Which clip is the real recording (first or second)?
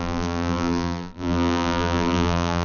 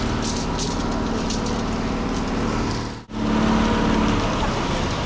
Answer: second